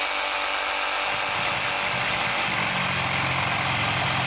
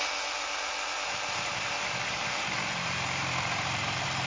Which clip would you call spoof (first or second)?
second